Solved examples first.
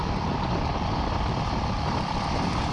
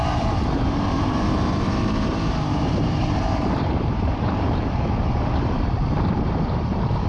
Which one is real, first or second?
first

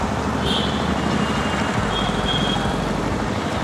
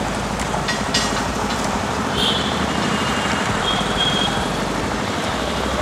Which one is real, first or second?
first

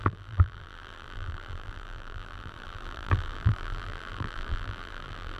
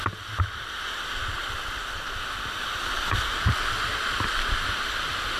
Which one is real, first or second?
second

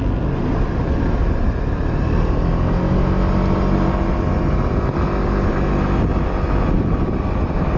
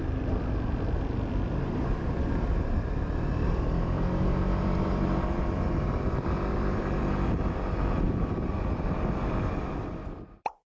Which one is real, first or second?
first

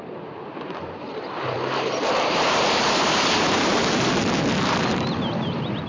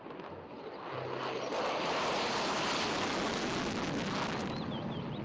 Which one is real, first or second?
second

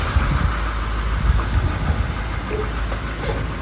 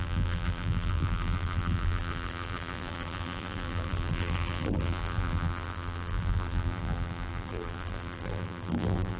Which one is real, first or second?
first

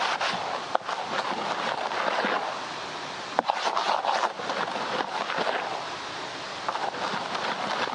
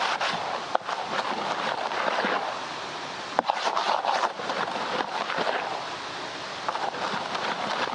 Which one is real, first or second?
first